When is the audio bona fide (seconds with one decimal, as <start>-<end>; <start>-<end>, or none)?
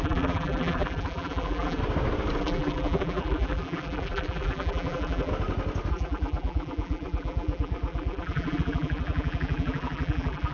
1.8-2.4; 5.3-5.9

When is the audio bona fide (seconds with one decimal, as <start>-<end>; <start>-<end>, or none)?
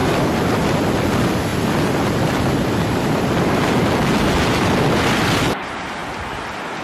0.9-1.5; 3.2-6.8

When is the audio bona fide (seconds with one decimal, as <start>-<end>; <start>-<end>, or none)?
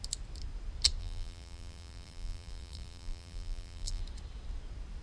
0.0-1.0; 4.0-5.0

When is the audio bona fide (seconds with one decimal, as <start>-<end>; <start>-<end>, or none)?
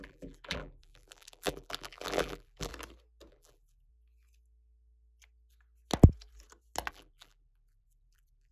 2.7-3.3; 3.9-6.9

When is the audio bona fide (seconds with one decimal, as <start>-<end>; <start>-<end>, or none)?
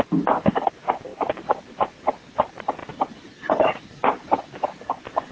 0.0-2.8; 4.1-5.3